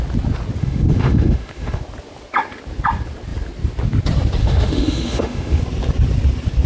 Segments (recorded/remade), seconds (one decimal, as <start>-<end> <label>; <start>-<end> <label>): 0.0-0.6 recorded; 0.6-1.8 remade; 1.8-4.4 recorded; 4.4-5.6 remade; 5.6-6.7 recorded